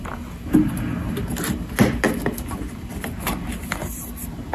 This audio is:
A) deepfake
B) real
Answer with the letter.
B